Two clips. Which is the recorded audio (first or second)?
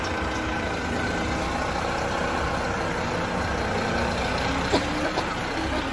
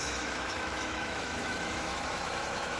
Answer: first